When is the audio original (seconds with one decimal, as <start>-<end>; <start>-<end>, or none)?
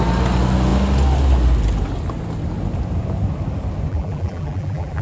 0.0-3.9